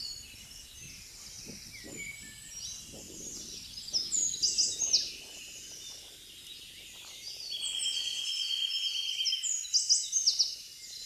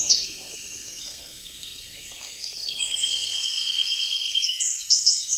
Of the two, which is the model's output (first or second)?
second